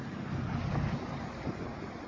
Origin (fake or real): real